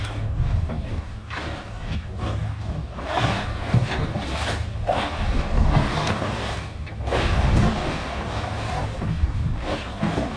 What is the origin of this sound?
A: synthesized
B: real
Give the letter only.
A